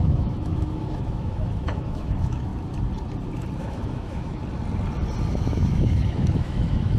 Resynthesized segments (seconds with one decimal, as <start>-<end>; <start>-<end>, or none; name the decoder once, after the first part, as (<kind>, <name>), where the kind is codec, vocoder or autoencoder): 0.0-2.5 (autoencoder, DAC-VAE); 3.6-4.4; 5.3-7.0